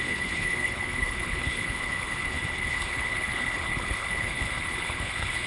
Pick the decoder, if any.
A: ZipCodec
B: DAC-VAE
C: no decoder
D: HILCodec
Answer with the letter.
D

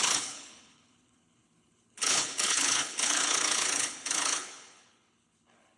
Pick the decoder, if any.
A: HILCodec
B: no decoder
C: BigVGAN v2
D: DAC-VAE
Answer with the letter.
A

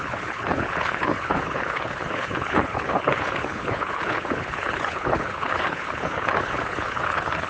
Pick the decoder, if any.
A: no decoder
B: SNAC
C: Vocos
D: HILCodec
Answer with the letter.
D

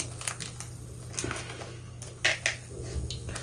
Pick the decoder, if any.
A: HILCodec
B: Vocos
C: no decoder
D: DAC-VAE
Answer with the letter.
C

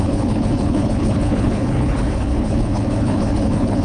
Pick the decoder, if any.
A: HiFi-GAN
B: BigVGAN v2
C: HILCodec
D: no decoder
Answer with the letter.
C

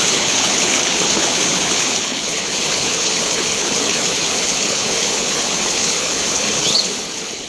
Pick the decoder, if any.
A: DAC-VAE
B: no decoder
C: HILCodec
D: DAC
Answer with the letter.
C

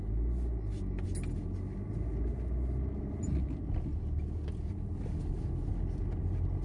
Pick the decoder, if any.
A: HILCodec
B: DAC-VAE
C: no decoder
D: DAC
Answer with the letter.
C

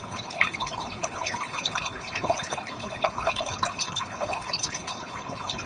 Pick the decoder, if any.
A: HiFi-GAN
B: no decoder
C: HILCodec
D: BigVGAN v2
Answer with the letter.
C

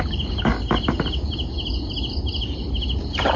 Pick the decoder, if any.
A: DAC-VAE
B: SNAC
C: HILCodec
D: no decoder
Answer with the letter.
D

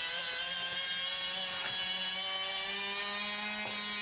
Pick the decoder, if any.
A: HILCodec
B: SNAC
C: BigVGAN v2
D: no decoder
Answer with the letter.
D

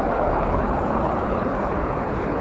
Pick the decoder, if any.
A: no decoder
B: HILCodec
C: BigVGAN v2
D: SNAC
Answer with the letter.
B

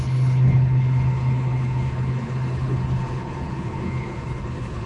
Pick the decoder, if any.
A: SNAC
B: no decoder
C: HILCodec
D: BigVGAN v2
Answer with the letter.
C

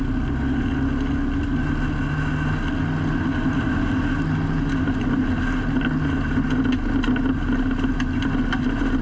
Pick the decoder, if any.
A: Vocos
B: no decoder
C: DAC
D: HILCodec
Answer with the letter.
B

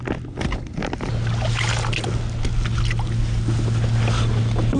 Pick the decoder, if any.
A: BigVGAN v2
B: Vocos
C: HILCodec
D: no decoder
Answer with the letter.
D